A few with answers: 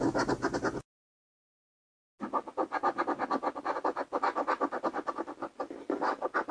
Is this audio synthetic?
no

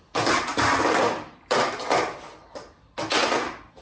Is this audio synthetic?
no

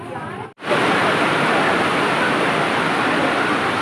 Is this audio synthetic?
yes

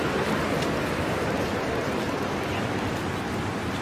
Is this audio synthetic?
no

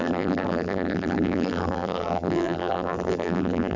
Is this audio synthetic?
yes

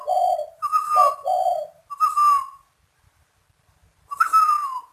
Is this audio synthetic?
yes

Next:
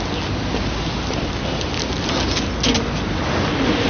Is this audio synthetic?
no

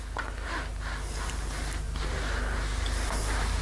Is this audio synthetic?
no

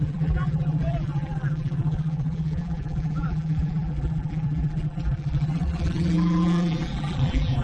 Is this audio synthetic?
yes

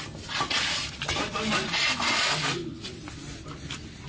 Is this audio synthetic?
no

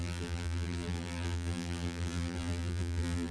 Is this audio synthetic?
yes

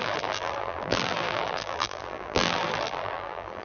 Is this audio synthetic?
yes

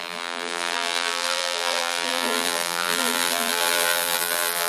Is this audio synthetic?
yes